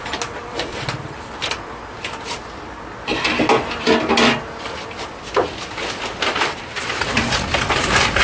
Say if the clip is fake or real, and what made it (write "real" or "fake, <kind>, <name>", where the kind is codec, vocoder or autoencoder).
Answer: real